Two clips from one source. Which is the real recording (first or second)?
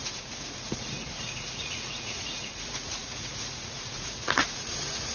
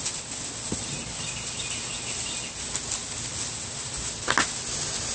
second